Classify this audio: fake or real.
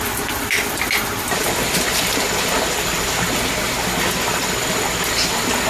real